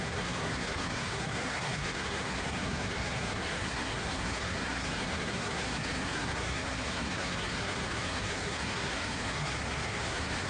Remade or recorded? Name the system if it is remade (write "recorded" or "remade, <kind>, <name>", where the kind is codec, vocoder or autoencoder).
remade, codec, SNAC